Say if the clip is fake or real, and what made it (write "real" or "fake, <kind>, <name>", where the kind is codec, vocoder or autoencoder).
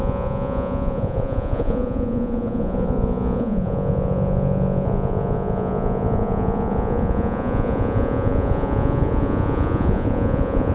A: fake, vocoder, Vocos